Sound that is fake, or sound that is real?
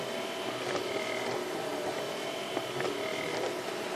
fake